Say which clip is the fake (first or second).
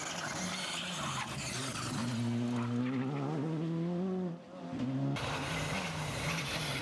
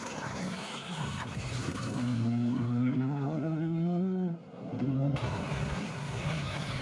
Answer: second